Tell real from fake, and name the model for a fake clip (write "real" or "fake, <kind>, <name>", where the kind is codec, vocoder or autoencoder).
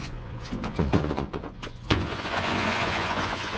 fake, vocoder, Vocos